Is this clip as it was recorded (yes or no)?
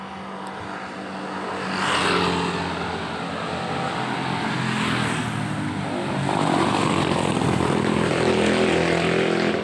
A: yes